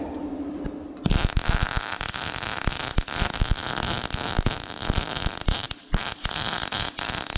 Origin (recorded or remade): recorded